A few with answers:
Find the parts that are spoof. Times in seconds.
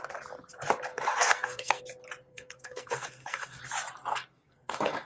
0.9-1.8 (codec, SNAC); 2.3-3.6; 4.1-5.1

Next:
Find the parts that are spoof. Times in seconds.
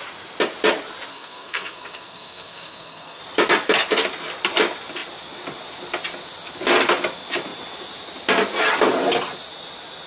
1.1-3.2 (codec, SNAC)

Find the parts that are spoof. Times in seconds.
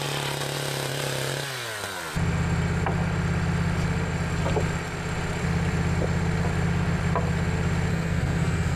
7.9-8.8 (codec, SNAC)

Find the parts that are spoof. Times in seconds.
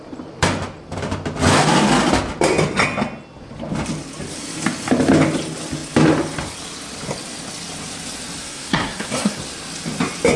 8.4-9.4 (codec, SNAC)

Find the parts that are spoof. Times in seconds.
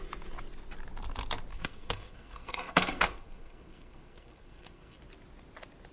1.5-5.0 (codec, SNAC)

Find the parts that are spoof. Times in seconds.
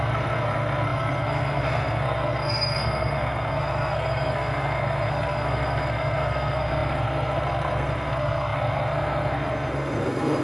0.0-10.4 (codec, SNAC)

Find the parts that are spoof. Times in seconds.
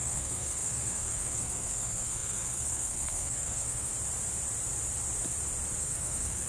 0.0-3.9 (codec, SNAC); 5.8-6.5